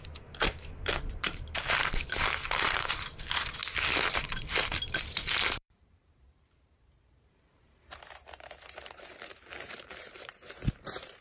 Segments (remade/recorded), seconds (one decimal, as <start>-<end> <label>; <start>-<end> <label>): 0.0-3.6 remade; 3.6-4.3 recorded; 4.3-11.2 remade